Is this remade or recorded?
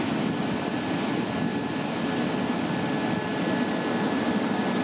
recorded